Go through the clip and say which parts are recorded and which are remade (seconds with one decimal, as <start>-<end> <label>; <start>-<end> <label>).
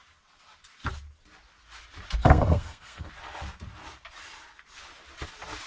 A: 0.0-2.2 recorded; 2.2-3.1 remade; 3.1-5.7 recorded